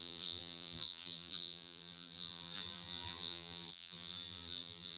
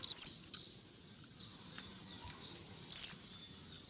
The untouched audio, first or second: second